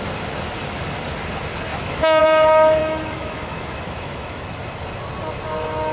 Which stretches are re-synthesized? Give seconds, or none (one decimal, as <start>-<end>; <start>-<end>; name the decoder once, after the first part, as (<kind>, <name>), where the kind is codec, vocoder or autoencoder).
1.7-2.2 (autoencoder, DAC-VAE); 2.8-4.6